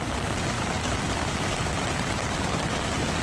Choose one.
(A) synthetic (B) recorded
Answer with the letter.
B